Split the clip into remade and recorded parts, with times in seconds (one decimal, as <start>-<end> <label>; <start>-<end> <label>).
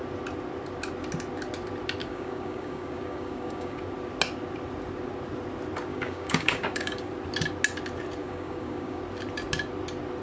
0.0-2.0 recorded; 2.0-3.8 remade; 3.8-5.9 recorded; 5.9-7.1 remade; 7.1-8.2 recorded; 8.2-9.0 remade; 9.0-10.2 recorded